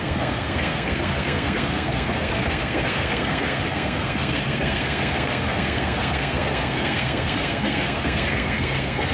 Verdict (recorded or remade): remade